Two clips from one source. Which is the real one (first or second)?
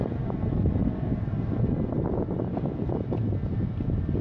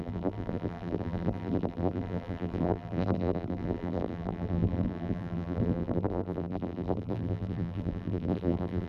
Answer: first